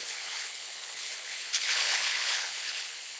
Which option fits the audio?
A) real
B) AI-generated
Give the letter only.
B